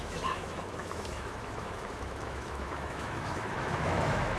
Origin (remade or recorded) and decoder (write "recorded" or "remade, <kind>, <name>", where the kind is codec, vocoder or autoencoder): remade, autoencoder, DAC-VAE